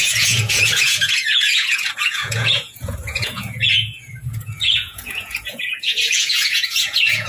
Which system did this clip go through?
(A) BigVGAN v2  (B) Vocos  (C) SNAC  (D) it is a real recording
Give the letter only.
B